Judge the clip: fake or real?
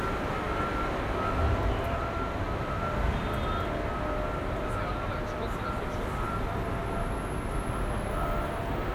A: real